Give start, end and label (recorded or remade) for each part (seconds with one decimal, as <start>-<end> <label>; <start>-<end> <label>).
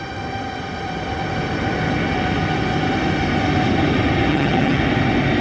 0.0-4.3 recorded; 4.3-4.8 remade; 4.8-5.4 recorded